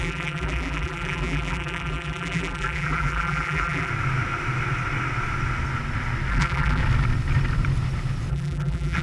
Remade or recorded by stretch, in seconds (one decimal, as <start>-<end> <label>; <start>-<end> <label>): 0.0-3.9 remade; 3.9-6.3 recorded; 6.3-6.8 remade; 6.8-8.3 recorded; 8.3-9.0 remade